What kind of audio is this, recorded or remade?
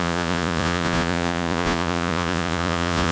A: remade